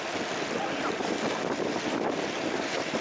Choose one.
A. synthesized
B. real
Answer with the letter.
B